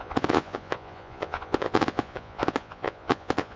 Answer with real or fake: fake